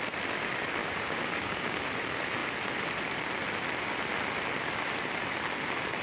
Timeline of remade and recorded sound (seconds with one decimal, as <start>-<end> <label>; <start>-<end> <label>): 0.0-0.8 recorded; 0.8-1.9 remade; 1.9-6.0 recorded